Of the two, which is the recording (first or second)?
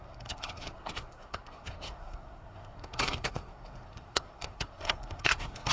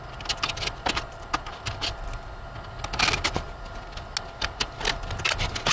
second